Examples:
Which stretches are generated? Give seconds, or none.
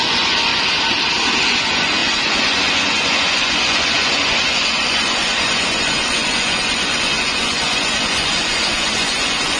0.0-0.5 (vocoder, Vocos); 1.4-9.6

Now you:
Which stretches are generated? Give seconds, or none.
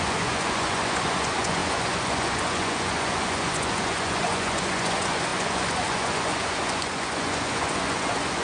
0.0-8.4 (vocoder, Vocos)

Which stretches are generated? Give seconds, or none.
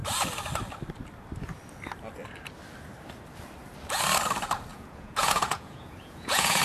4.7-6.6 (vocoder, Vocos)